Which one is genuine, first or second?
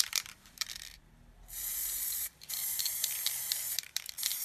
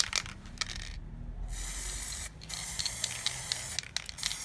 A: second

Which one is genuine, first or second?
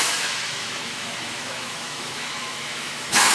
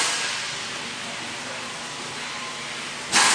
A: second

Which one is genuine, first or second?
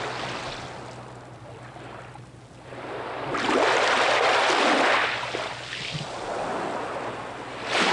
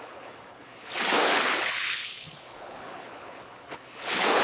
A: first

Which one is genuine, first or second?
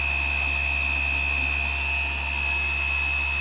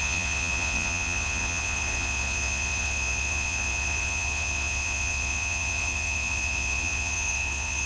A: first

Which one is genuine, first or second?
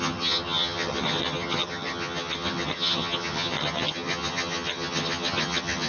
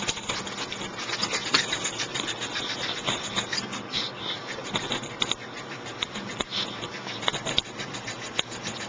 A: second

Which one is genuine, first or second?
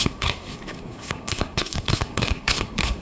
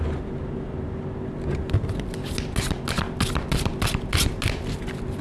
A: second